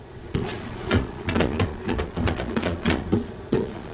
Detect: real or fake fake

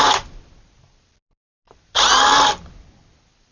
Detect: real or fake real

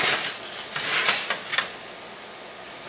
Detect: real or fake real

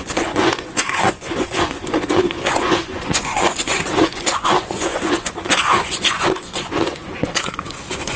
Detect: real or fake fake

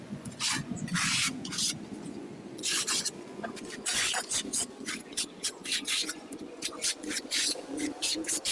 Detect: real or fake fake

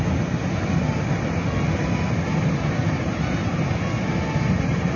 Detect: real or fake real